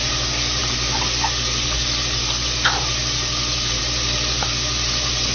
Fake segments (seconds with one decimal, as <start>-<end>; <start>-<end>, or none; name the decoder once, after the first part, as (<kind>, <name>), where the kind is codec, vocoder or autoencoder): none